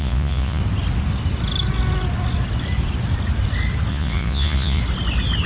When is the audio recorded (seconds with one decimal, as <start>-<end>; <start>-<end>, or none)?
0.6-3.9; 4.8-5.5